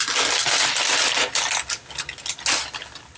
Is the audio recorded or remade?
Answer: recorded